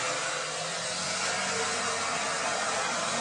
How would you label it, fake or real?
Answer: real